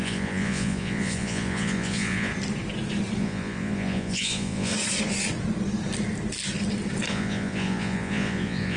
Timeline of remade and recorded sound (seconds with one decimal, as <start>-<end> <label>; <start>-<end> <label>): 0.0-2.3 remade; 2.3-3.2 recorded; 3.2-4.7 remade; 4.7-7.1 recorded; 7.1-8.8 remade